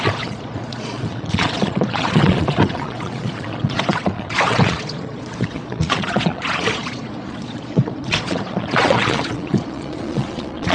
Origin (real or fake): fake